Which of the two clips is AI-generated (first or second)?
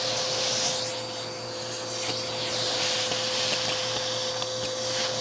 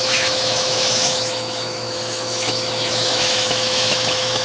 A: second